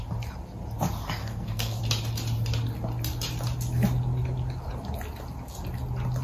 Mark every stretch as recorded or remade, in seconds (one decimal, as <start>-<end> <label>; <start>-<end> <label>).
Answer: 0.0-1.2 recorded; 1.2-1.8 remade; 1.8-6.2 recorded